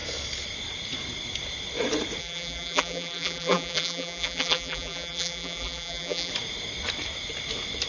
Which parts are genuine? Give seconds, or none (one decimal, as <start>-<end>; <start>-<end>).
0.0-2.2; 6.3-7.9